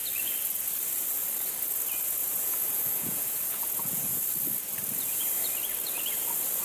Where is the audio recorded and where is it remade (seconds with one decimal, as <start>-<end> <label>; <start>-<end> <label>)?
0.0-2.2 recorded; 2.2-4.2 remade; 4.2-6.6 recorded